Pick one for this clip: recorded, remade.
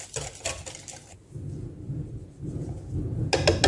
recorded